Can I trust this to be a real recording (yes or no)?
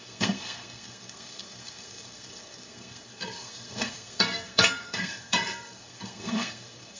no